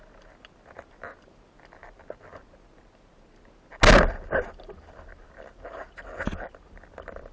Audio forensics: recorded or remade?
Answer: recorded